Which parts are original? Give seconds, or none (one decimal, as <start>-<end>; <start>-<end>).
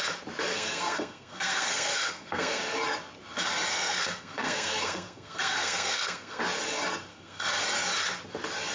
0.0-0.5; 2.6-3.7; 6.4-7.1; 7.6-8.7